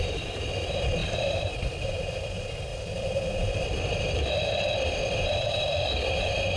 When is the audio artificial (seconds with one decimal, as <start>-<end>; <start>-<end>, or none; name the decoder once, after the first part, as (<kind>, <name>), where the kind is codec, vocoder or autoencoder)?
1.0-1.9 (vocoder, BigVGAN v2); 2.7-6.1